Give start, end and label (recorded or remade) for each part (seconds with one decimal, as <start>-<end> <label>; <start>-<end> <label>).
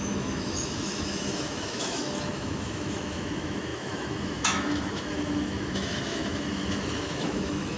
0.0-7.8 remade